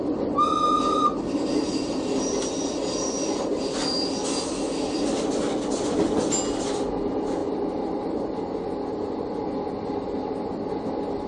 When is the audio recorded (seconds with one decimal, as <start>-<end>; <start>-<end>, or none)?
0.0-11.3